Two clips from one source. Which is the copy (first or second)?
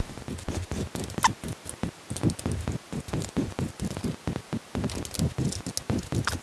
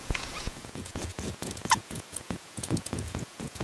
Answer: second